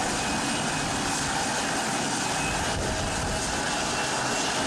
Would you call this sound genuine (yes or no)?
yes